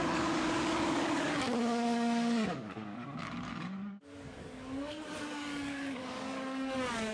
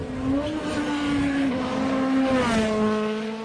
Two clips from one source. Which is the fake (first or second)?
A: first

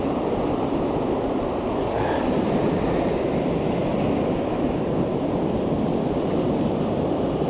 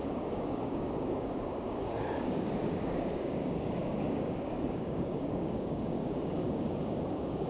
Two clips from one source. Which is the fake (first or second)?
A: second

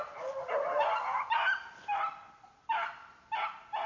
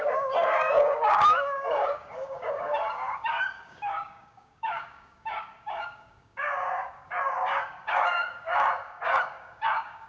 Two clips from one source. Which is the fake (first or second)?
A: second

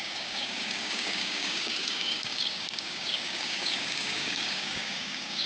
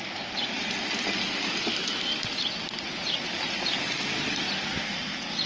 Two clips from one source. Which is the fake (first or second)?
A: first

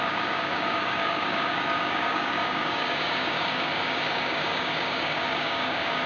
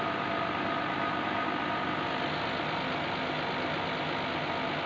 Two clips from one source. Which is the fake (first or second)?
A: first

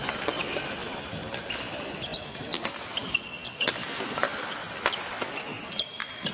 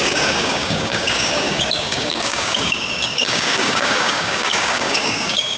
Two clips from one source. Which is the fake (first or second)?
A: second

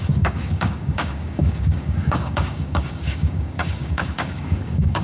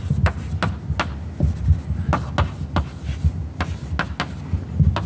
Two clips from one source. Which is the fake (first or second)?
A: first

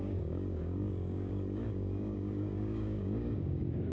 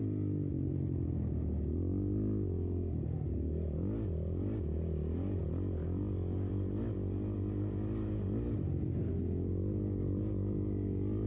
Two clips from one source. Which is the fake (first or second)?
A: first